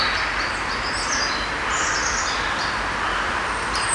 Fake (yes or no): no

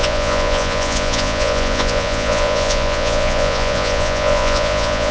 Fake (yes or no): yes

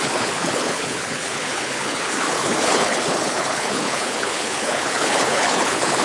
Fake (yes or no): yes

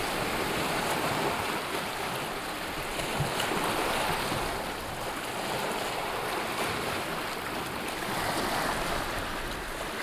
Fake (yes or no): no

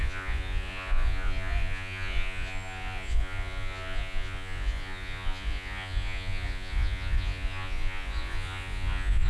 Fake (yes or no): yes